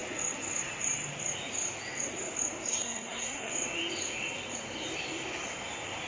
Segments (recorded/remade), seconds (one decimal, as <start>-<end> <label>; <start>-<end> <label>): 0.0-2.7 recorded; 2.7-3.5 remade; 3.5-6.1 recorded